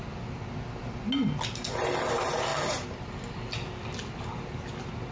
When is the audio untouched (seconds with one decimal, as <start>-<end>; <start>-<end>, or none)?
0.0-5.1